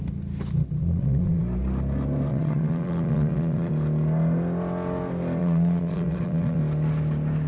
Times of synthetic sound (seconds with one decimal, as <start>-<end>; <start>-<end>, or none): 0.8-1.4; 2.3-3.7; 5.4-6.6